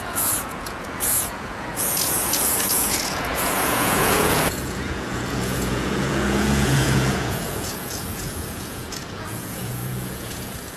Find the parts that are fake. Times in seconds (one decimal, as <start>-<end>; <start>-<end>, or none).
0.0-10.8